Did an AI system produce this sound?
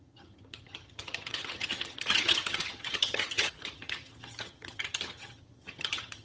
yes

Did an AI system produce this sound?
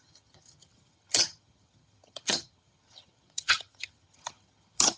yes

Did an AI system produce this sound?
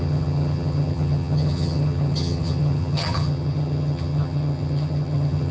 yes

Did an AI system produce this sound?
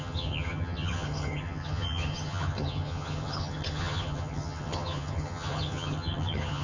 yes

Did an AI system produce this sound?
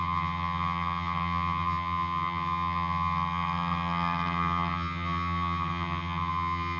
yes